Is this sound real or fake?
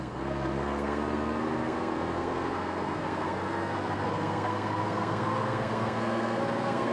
fake